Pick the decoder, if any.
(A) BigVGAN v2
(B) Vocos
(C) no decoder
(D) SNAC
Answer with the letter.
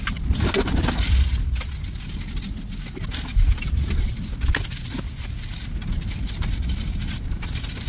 C